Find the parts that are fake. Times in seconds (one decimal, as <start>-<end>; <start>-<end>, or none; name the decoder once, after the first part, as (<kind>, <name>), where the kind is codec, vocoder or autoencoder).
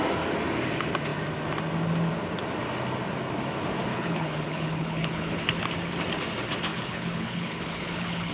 3.9-5.6 (codec, HILCodec); 6.7-8.3